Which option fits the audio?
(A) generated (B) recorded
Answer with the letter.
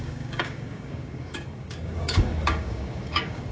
A